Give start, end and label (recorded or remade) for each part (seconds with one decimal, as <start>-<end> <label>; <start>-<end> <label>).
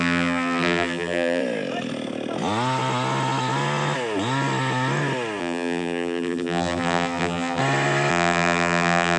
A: 0.0-1.4 remade; 1.4-5.4 recorded; 5.4-7.6 remade; 7.6-8.1 recorded; 8.1-9.2 remade